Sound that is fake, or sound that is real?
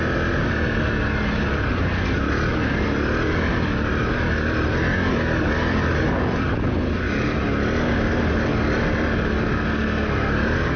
real